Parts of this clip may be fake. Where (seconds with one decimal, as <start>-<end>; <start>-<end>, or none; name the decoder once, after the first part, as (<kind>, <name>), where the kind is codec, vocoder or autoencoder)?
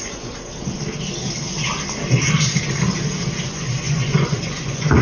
0.0-0.5 (vocoder, Vocos); 3.5-5.0